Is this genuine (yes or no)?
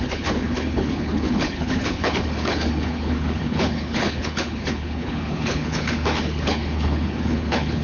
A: no